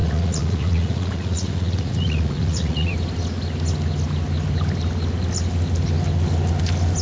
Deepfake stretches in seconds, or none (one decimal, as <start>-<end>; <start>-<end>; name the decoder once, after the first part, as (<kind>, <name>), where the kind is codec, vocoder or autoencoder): 0.0-2.9 (vocoder, Vocos)